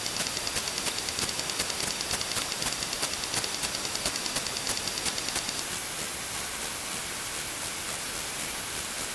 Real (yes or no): yes